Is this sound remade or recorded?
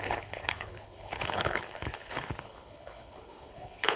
remade